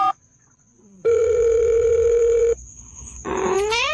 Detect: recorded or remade remade